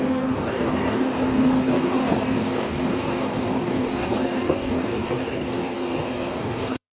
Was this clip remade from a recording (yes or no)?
yes